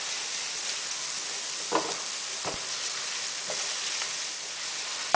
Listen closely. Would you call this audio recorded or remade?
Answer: recorded